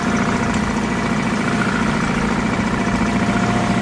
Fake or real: real